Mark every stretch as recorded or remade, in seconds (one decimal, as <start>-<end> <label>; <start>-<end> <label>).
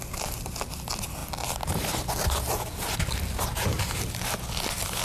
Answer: 0.0-5.0 recorded